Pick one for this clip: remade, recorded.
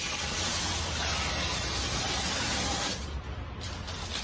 recorded